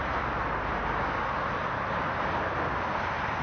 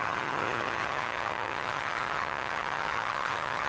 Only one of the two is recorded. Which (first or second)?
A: first